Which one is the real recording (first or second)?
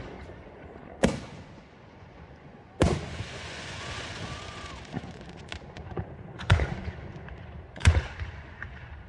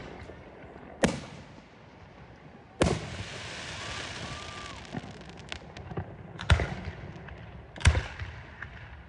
second